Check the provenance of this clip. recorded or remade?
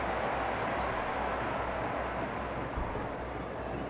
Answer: recorded